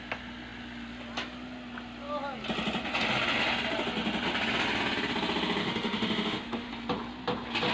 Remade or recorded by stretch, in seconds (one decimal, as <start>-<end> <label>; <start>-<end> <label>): 0.0-5.6 recorded; 5.6-6.7 remade; 6.7-7.7 recorded